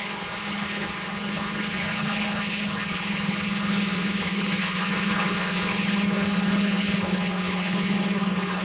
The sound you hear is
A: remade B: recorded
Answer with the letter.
A